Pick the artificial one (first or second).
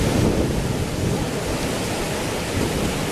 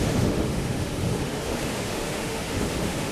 second